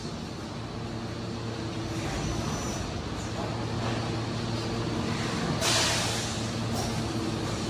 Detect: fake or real real